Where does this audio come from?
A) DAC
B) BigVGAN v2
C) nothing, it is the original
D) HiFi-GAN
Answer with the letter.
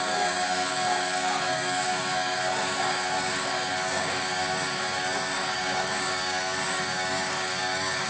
A